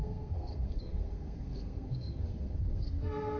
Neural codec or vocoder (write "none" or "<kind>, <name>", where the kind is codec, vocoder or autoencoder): codec, SNAC